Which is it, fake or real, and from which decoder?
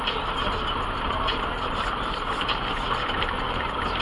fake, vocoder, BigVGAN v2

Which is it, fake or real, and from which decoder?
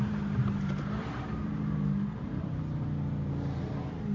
real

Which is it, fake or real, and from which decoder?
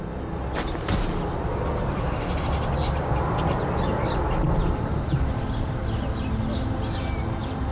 real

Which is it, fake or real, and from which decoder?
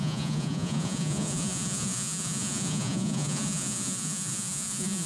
fake, vocoder, Vocos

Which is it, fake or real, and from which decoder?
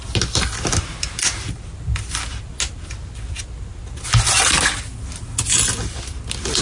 real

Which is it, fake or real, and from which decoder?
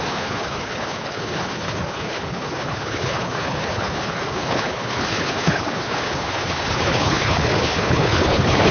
fake, codec, HILCodec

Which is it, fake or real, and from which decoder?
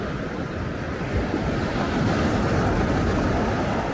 real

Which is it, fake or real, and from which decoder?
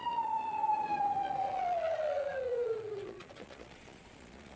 fake, vocoder, Vocos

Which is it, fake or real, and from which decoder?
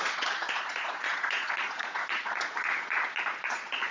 fake, vocoder, Vocos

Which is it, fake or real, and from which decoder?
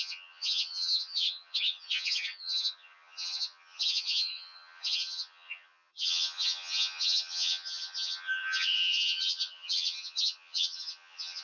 fake, vocoder, HiFi-GAN